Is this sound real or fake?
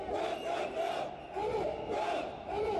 real